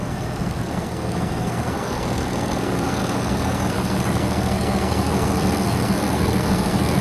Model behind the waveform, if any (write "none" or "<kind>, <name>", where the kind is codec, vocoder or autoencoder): codec, SNAC